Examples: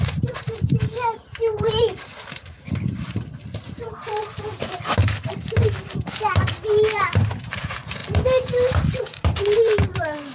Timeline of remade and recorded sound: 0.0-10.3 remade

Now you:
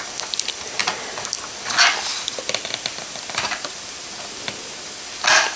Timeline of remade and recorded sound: 0.0-5.6 recorded

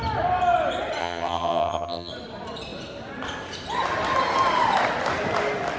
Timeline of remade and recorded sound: 0.0-1.0 recorded; 1.0-2.1 remade; 2.1-5.8 recorded

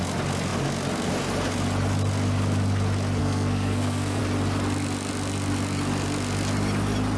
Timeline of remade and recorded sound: 0.0-3.2 recorded; 3.2-4.2 remade; 4.2-7.2 recorded

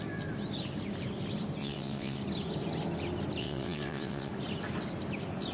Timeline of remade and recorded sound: 0.0-1.6 recorded; 1.6-2.2 remade; 2.2-3.4 recorded; 3.4-4.3 remade; 4.3-5.5 recorded